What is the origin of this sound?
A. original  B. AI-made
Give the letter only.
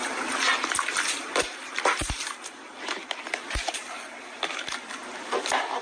A